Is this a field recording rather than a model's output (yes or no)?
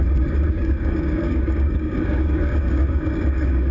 no